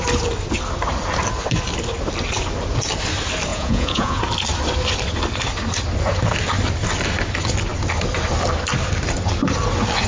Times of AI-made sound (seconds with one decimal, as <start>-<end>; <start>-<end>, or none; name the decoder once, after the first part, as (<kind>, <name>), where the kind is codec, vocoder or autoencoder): 3.5-4.2 (vocoder, Vocos)